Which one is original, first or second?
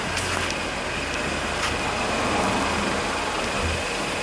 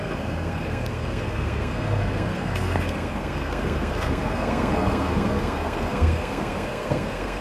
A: first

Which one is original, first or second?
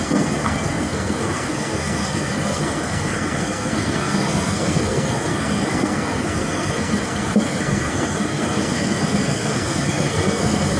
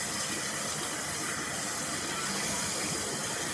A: second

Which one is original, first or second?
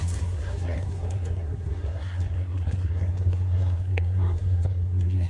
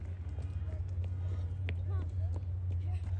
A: second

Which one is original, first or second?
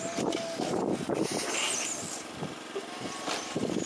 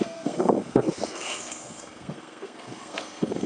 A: first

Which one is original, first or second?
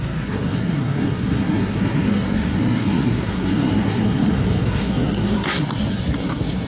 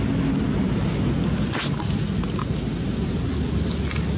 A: second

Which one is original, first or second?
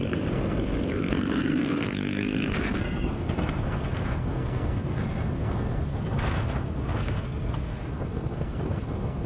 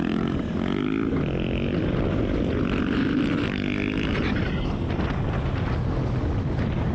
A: second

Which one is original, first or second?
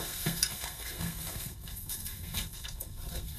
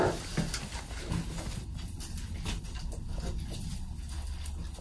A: second